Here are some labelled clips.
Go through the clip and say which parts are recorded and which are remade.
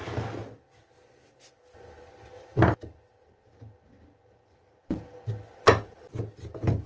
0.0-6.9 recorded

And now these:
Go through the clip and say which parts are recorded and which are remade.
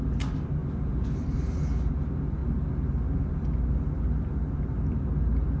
0.0-5.6 recorded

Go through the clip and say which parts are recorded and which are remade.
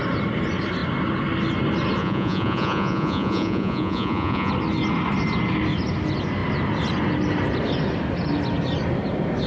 0.0-2.0 recorded; 2.0-4.5 remade; 4.5-9.5 recorded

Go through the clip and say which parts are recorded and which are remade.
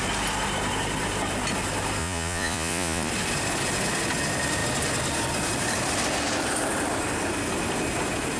0.0-2.0 recorded; 2.0-3.1 remade; 3.1-8.4 recorded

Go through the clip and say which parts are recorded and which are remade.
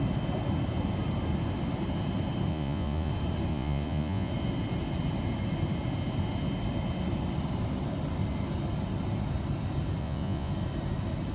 0.0-2.5 recorded; 2.5-3.1 remade; 3.1-3.5 recorded; 3.5-4.3 remade; 4.3-10.0 recorded; 10.0-10.5 remade; 10.5-11.3 recorded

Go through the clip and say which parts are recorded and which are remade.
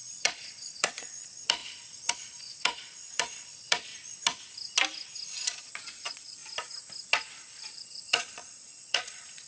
0.0-3.9 remade; 3.9-5.6 recorded; 5.6-6.4 remade; 6.4-7.7 recorded; 7.7-9.5 remade